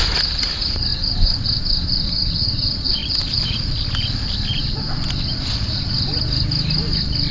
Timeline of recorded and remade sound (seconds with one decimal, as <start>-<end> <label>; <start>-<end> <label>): 0.0-0.9 recorded; 0.9-1.6 remade; 1.6-3.0 recorded; 3.0-4.8 remade; 4.8-7.3 recorded

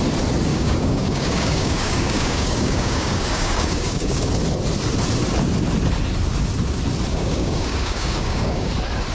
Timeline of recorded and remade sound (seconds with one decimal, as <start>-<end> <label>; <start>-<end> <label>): 0.0-0.5 recorded; 0.5-4.2 remade; 4.2-7.1 recorded; 7.1-8.7 remade; 8.7-9.1 recorded

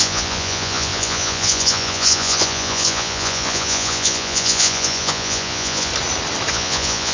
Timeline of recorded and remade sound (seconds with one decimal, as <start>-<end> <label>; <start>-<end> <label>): 0.0-5.9 remade; 5.9-6.5 recorded; 6.5-7.1 remade

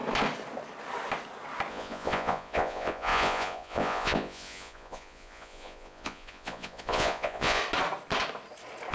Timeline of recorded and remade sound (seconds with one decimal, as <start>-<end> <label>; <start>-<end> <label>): 0.0-1.7 recorded; 1.7-7.6 remade; 7.6-8.9 recorded

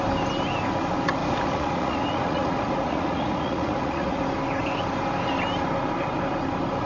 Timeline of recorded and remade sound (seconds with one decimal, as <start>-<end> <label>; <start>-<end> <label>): 0.0-1.2 recorded; 1.2-4.2 remade; 4.2-6.9 recorded